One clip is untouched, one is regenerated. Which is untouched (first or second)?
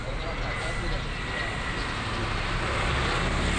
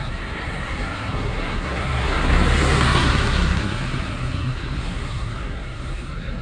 first